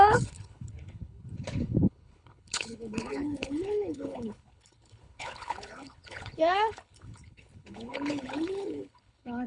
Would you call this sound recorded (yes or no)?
no